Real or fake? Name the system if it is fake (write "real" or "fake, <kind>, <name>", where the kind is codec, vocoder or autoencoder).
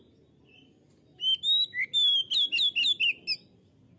real